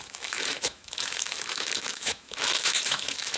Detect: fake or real fake